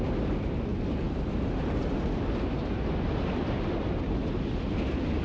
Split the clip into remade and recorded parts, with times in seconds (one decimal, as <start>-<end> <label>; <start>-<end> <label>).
0.0-5.2 recorded